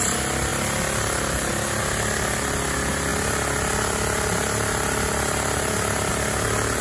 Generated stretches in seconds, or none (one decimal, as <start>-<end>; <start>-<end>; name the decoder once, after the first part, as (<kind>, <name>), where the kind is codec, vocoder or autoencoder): none